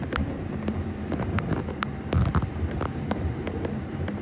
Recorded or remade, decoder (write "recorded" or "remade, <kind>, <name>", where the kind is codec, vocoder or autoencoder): remade, vocoder, BigVGAN v2